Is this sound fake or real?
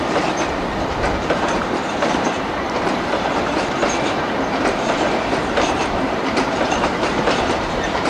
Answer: fake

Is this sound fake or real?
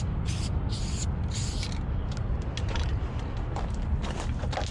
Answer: real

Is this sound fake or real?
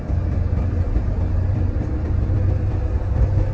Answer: real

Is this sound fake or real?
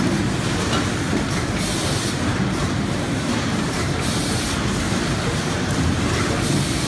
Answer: real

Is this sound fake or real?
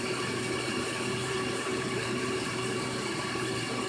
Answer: fake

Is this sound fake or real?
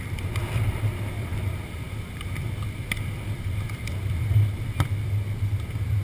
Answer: fake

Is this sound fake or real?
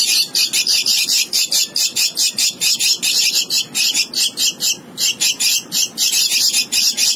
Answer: real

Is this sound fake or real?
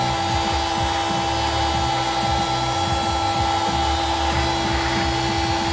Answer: real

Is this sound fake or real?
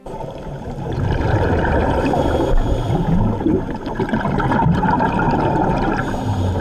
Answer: fake